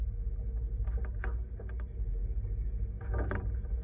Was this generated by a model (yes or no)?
no